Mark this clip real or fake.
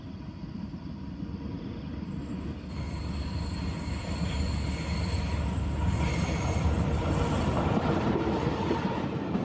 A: real